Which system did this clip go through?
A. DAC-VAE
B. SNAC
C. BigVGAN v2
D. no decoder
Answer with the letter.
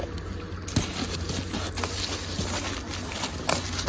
D